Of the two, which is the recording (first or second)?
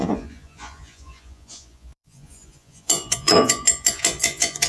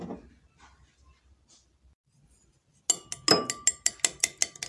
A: second